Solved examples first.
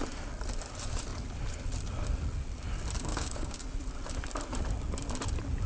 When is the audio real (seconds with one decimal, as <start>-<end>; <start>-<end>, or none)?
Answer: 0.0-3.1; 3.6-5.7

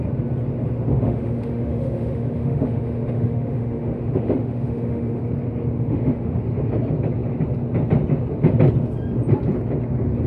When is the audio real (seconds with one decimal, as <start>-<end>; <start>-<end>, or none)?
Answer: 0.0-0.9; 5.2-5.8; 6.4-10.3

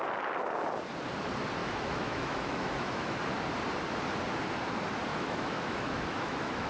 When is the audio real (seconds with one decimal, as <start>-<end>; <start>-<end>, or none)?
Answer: 0.0-1.6; 3.2-5.1